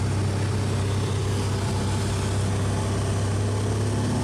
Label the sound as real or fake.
real